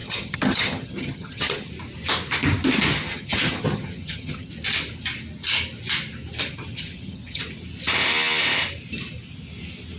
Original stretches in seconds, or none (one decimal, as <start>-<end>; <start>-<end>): 1.7-2.9; 4.5-6.5; 7.4-10.0